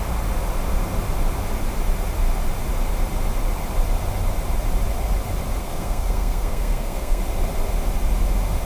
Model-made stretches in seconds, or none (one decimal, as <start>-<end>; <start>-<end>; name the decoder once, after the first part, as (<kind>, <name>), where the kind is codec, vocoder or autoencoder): 5.6-7.2 (codec, SNAC)